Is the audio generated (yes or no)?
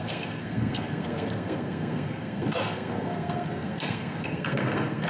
yes